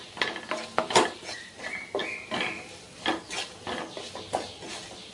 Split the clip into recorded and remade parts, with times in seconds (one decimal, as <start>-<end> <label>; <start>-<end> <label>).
0.0-5.1 recorded